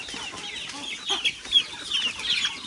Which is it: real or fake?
real